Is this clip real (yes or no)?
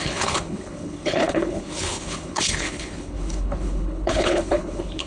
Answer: no